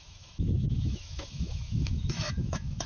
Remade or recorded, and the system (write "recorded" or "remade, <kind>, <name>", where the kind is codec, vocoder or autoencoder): remade, autoencoder, DAC-VAE